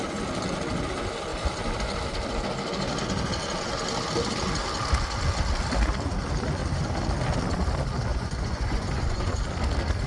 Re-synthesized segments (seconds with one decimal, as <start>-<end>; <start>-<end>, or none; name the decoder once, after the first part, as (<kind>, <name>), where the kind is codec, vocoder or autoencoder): 8.1-9.4 (vocoder, Vocos)